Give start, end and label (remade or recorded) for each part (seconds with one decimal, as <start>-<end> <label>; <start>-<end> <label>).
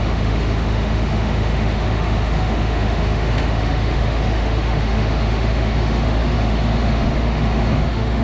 0.0-8.2 remade